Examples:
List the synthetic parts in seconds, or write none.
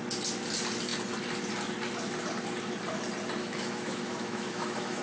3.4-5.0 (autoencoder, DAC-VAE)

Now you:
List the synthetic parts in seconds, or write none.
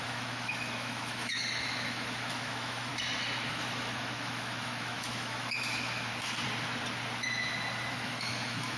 0.0-2.9 (autoencoder, DAC-VAE); 3.5-6.1; 7.9-8.8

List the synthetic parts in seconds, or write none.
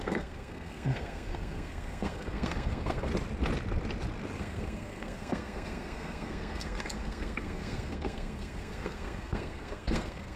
0.0-3.1 (codec, SNAC); 4.4-10.4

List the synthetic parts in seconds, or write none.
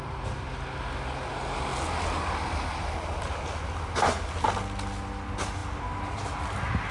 none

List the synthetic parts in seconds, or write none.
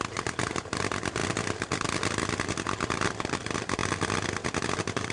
0.0-1.2 (vocoder, BigVGAN v2); 3.3-3.8